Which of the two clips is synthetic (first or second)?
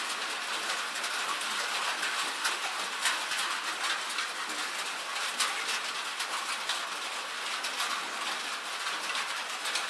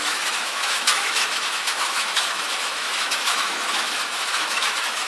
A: second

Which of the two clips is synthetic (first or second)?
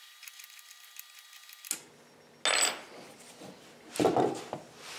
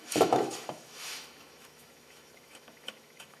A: second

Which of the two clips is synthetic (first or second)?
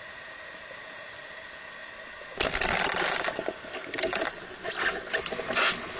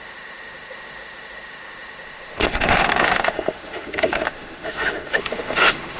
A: second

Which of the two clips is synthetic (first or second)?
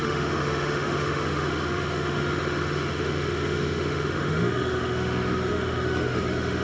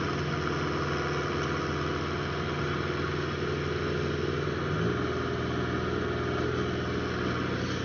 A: first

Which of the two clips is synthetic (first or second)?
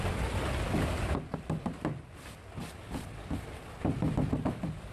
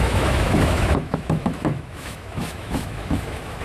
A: second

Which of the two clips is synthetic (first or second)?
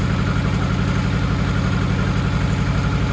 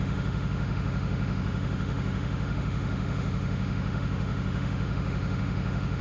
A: second